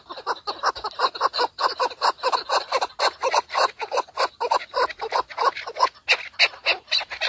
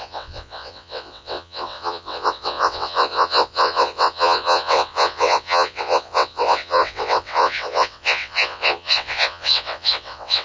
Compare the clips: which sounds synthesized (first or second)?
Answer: second